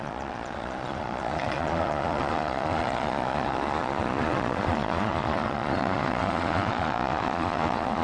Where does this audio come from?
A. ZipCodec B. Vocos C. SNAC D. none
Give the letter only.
B